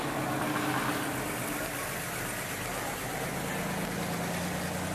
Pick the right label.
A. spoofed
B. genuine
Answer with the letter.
B